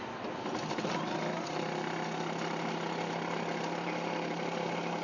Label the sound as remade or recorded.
recorded